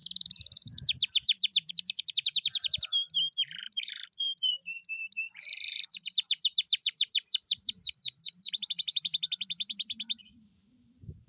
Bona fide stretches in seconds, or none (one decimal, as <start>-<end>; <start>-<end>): 0.0-3.6; 8.7-11.3